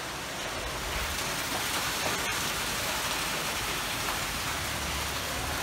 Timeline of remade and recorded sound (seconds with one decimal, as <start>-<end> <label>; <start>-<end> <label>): 0.0-2.3 recorded; 2.3-4.6 remade; 4.6-5.6 recorded